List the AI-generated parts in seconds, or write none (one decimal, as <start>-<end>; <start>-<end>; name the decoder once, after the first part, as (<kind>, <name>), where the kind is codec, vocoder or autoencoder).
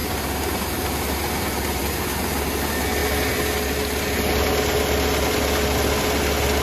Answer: none